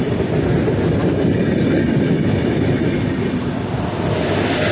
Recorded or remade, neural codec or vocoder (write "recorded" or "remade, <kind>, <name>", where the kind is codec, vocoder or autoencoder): recorded